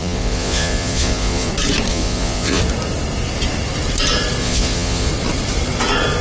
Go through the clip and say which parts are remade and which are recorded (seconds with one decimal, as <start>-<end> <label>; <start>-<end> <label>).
0.0-1.5 remade; 1.5-1.9 recorded; 1.9-2.6 remade; 2.6-4.4 recorded; 4.4-5.1 remade; 5.1-6.2 recorded